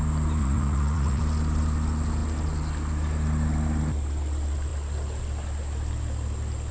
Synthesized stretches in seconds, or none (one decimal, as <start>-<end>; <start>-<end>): 0.4-1.2